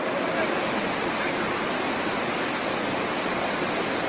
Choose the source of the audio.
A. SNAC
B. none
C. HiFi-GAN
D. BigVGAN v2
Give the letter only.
B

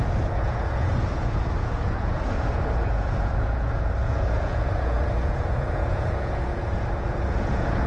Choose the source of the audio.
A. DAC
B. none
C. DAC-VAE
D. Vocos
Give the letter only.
D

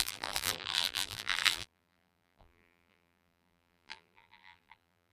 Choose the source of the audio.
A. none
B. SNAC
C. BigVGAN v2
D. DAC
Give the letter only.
C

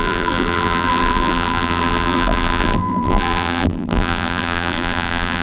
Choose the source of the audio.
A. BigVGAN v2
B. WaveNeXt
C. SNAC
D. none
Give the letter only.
A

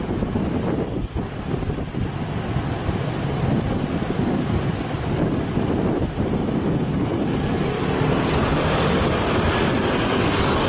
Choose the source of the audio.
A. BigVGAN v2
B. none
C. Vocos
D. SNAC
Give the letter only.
B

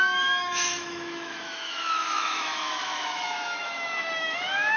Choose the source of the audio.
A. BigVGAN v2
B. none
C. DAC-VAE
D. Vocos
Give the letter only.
C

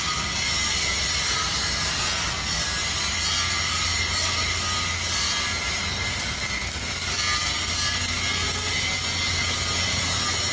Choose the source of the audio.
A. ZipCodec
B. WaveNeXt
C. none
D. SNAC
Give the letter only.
C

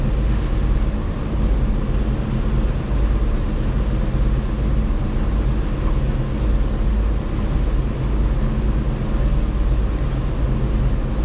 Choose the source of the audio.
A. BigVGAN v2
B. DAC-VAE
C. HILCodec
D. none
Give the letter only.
D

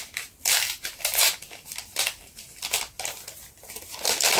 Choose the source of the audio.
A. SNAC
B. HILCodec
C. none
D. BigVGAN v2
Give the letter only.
C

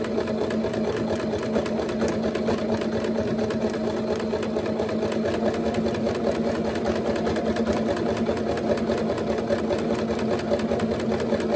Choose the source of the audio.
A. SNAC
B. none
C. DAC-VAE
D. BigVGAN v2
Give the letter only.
B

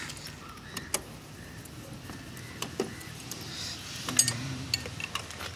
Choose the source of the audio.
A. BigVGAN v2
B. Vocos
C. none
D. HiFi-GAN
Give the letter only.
C